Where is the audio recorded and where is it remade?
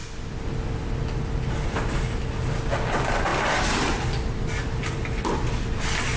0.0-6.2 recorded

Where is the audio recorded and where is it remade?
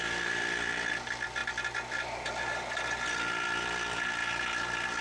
0.0-4.2 remade; 4.2-5.0 recorded